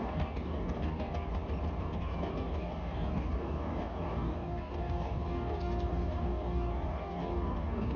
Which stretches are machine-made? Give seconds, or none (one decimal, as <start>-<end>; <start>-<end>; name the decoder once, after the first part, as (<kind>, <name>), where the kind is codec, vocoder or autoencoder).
0.0-1.3 (codec, DAC); 1.8-8.0